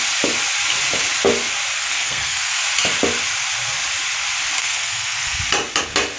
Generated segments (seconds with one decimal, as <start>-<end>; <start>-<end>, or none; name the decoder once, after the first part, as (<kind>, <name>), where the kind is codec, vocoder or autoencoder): 1.8-2.6 (codec, SNAC); 4.6-5.4